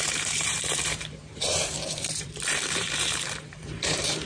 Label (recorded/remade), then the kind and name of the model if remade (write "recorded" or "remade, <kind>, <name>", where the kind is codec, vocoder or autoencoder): remade, vocoder, BigVGAN v2